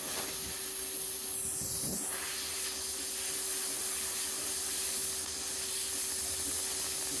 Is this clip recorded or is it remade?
recorded